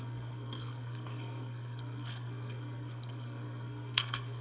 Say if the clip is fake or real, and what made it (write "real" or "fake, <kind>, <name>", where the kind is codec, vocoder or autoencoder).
fake, codec, SNAC